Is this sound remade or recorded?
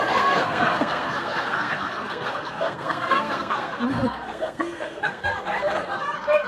remade